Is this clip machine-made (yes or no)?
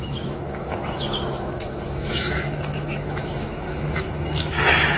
yes